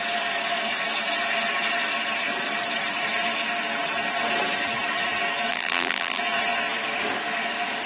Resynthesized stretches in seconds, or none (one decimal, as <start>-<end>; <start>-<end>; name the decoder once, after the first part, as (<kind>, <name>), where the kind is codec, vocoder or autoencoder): 5.5-6.2 (vocoder, BigVGAN v2)